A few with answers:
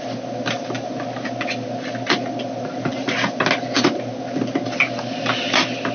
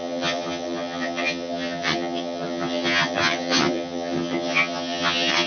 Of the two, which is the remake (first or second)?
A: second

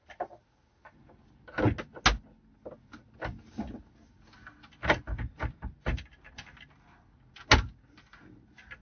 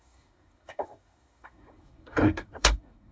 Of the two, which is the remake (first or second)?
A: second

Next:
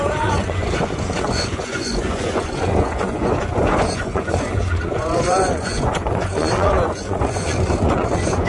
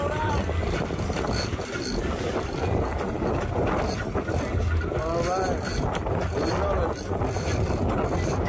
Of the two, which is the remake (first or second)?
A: first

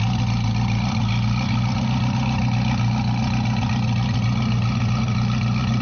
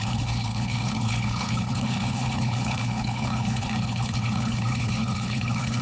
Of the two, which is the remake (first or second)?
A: second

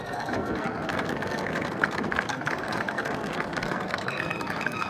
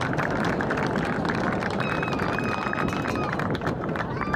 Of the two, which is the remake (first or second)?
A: first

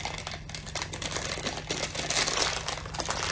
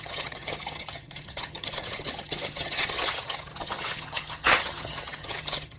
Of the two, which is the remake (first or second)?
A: second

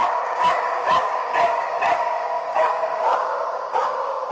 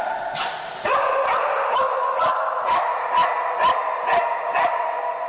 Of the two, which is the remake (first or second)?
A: first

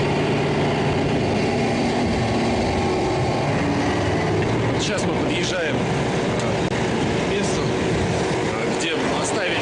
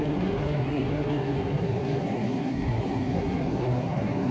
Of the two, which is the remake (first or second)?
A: second